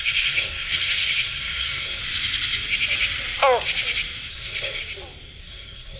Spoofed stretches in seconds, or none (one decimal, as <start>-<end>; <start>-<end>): 0.0-2.0; 4.3-4.8; 5.4-6.0

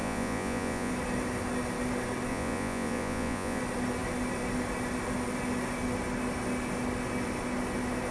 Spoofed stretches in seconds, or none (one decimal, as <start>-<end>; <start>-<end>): 0.0-0.9; 2.3-3.6

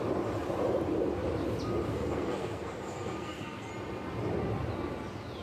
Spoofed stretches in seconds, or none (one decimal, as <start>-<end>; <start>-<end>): 1.9-3.7

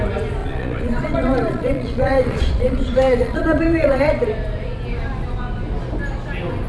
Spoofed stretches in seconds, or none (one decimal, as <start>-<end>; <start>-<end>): 0.4-4.1

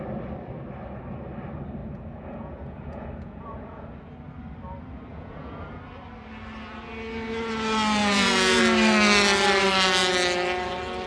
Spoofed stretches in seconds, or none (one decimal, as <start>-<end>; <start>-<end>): 1.8-3.9; 5.1-5.8; 8.0-8.6

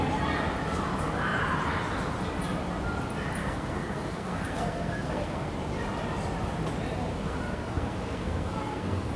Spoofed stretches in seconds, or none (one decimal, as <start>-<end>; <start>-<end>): 3.4-5.5; 7.1-9.2

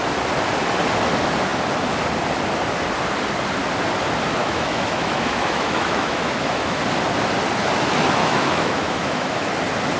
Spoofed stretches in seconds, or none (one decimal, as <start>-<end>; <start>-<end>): 4.4-6.8; 8.2-9.5